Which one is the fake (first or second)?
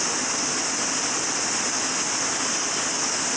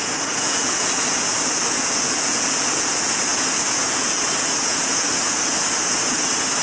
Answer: second